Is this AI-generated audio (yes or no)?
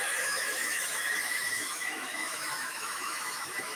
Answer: yes